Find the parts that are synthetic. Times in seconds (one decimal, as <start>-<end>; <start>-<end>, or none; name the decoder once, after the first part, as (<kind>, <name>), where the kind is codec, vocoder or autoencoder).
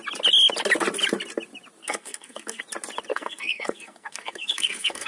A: 1.8-2.6 (codec, SNAC); 3.1-5.1